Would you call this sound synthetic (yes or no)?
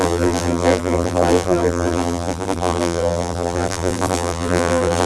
yes